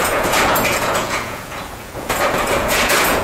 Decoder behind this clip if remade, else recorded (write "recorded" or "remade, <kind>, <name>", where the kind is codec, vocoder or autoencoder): remade, vocoder, Vocos